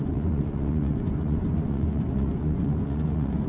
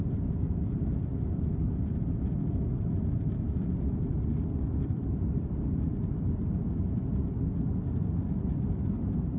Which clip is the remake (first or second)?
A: first